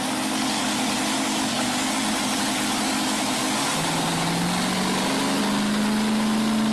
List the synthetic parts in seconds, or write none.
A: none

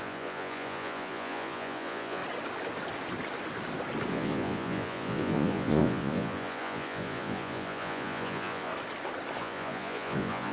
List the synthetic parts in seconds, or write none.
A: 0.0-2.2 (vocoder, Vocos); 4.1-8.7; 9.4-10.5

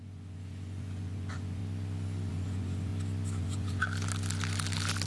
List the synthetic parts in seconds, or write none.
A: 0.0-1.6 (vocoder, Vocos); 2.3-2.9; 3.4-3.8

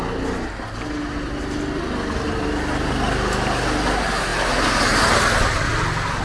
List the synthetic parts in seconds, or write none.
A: none

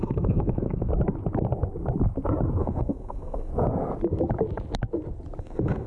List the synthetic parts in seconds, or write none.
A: 0.0-0.9 (codec, SNAC); 2.6-3.5; 5.4-5.9

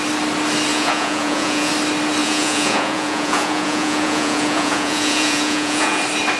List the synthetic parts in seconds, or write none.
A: 0.7-1.7 (vocoder, Vocos); 2.2-6.0

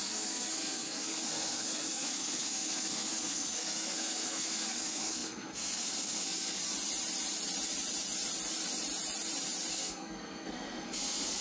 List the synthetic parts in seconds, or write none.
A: 0.0-6.6 (codec, SNAC); 9.7-11.4